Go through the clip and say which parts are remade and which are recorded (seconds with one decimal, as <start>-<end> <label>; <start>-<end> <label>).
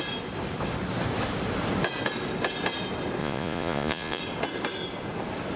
0.0-3.2 recorded; 3.2-4.2 remade; 4.2-5.6 recorded